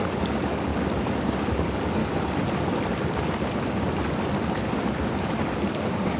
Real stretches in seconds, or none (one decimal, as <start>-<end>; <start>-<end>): 0.7-1.5; 2.0-5.7